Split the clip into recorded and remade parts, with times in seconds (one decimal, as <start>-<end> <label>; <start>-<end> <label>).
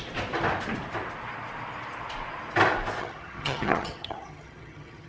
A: 0.0-3.0 recorded; 3.0-5.1 remade